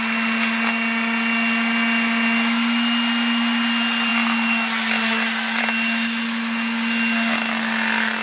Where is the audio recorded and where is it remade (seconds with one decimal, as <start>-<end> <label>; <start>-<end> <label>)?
0.0-8.2 recorded